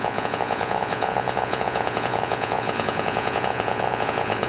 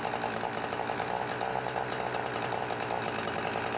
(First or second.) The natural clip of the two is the second